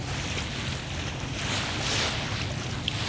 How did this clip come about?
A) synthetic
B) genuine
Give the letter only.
B